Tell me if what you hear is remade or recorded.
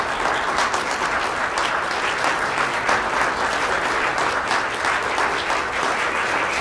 recorded